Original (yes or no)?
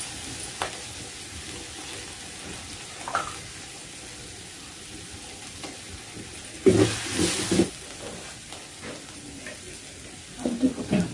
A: yes